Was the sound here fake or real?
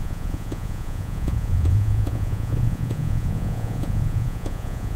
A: fake